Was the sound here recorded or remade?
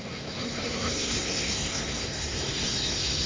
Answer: remade